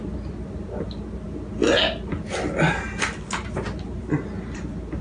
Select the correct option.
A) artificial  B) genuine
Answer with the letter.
B